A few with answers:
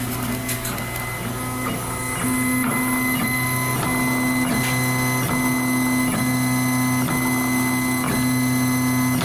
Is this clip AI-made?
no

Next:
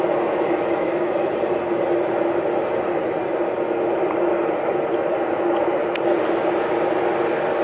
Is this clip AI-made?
no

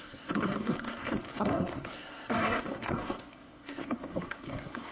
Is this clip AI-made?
yes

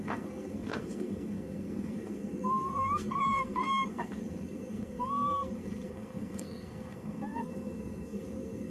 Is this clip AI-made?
yes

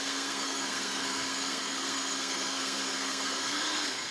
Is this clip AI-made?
yes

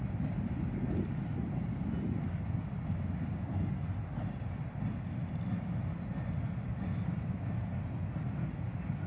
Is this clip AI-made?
no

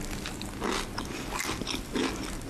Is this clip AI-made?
no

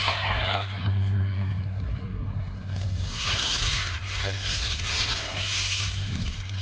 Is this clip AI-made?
yes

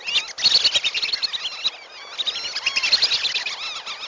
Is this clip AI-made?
no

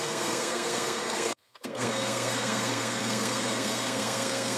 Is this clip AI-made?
yes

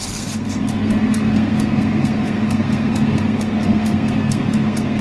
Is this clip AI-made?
yes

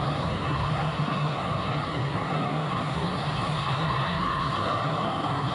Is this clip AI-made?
yes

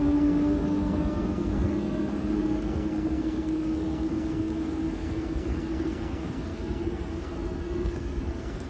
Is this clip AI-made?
yes